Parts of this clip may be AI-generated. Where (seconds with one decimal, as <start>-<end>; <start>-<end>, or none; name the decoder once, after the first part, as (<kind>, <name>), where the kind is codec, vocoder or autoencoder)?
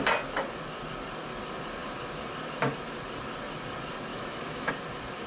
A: 4.1-4.7 (autoencoder, DAC-VAE)